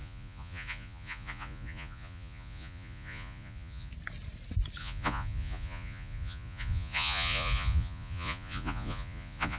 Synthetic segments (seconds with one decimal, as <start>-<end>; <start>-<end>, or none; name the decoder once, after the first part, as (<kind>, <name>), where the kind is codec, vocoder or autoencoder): 0.0-3.9 (vocoder, Vocos); 4.8-9.6